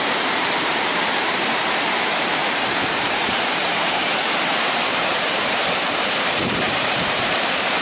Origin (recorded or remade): remade